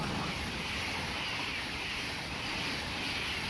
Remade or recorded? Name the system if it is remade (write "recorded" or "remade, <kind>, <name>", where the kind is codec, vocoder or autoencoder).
recorded